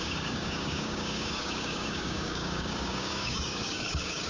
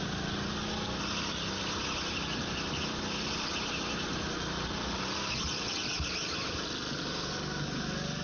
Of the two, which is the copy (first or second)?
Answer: first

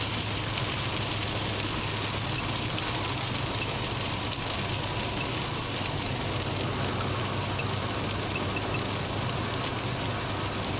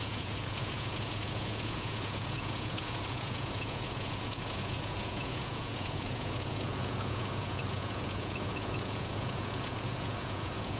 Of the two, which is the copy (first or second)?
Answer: second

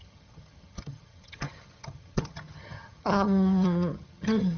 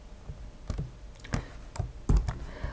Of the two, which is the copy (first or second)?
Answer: first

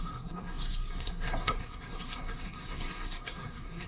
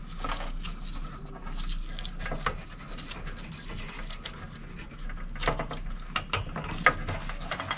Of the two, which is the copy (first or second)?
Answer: first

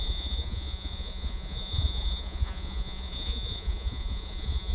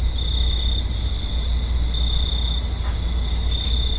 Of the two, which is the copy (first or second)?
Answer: first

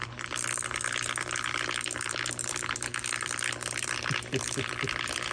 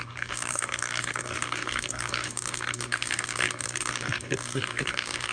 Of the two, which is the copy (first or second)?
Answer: second